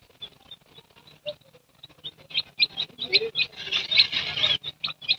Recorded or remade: recorded